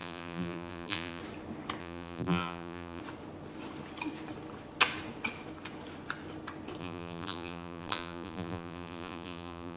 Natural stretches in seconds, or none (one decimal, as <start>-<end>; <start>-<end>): 1.2-1.8; 3.0-6.8